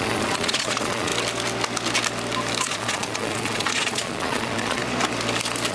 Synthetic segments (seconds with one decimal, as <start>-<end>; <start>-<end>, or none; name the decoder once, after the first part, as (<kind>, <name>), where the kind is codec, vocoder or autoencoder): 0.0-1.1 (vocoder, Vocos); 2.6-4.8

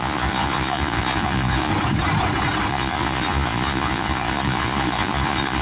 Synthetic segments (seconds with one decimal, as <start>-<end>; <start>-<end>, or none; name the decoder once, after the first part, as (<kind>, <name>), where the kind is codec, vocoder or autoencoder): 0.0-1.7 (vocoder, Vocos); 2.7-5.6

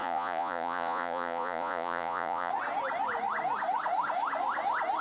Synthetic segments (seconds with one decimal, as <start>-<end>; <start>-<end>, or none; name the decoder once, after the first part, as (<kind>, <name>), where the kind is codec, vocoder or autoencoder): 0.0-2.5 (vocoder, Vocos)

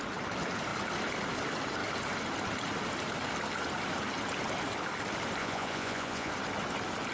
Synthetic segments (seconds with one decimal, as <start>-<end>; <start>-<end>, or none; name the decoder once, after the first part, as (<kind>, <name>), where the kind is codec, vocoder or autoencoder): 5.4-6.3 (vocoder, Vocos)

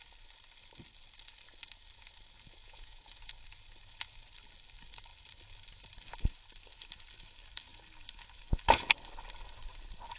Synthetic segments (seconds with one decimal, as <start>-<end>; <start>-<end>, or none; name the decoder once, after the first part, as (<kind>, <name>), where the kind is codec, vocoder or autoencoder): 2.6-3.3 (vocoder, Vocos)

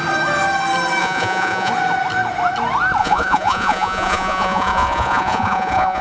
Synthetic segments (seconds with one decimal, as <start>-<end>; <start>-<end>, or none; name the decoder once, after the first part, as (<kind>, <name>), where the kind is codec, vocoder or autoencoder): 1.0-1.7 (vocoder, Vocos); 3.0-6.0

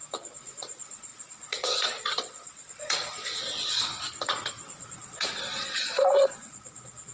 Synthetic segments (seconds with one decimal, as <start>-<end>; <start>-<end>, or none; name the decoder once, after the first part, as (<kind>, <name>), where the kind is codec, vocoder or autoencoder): 0.0-7.1 (vocoder, Vocos)